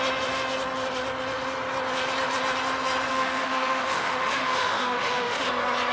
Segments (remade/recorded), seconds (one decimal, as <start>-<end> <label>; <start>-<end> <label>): 0.0-3.1 recorded; 3.1-5.5 remade; 5.5-5.9 recorded